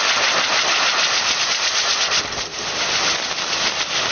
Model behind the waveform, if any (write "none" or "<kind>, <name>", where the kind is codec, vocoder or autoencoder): vocoder, BigVGAN v2